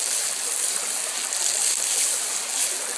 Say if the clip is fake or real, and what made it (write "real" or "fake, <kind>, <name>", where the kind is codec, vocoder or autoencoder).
real